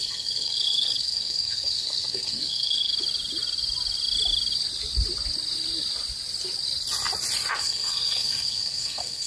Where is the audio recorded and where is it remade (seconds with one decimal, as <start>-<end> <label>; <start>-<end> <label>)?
0.0-2.9 remade; 2.9-7.6 recorded; 7.6-9.3 remade